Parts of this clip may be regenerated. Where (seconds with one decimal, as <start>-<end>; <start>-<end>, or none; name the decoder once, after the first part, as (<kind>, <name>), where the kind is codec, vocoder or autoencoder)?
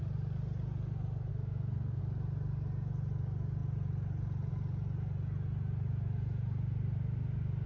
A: 1.3-2.0 (codec, SNAC)